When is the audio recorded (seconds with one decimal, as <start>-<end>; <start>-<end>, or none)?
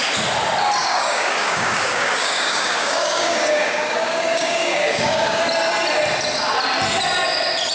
0.0-0.8; 5.4-7.7